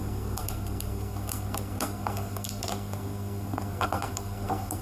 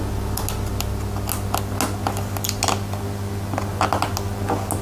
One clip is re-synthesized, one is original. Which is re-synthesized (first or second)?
first